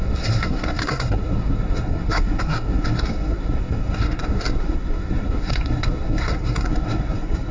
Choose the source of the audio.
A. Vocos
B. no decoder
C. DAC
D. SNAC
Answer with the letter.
D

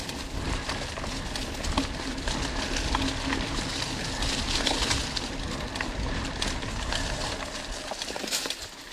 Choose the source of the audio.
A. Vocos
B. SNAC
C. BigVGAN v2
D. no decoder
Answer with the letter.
D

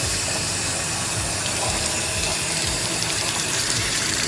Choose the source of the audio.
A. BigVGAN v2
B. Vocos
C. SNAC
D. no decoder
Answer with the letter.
A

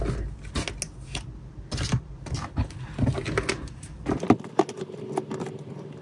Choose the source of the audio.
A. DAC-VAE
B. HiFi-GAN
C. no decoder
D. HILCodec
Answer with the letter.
C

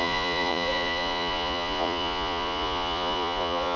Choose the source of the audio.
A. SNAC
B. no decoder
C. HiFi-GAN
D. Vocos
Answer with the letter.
D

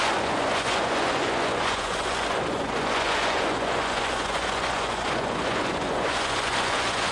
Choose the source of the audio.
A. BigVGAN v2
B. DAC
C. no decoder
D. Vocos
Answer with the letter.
D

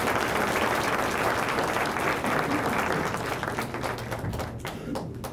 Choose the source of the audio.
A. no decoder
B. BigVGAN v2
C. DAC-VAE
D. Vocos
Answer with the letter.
A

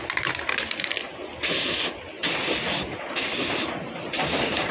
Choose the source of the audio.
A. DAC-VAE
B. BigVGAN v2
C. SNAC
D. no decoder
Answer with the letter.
D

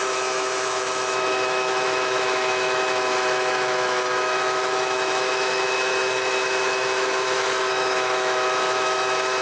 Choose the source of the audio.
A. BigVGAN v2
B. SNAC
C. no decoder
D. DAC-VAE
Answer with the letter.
D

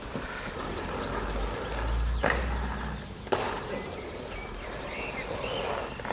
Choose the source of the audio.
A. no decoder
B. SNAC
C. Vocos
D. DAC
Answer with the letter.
A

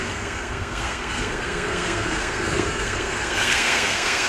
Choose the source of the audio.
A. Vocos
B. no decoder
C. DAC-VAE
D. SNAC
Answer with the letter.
D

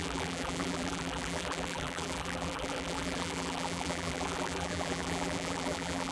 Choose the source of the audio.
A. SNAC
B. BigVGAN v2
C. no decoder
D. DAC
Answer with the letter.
B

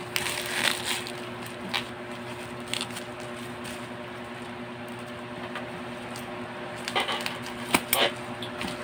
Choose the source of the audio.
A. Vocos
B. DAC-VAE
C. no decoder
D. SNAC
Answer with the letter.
C